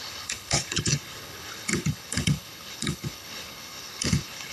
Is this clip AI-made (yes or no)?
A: yes